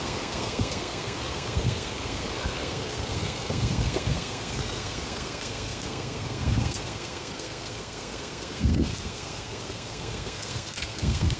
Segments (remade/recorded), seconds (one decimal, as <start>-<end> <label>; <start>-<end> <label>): 0.0-11.4 remade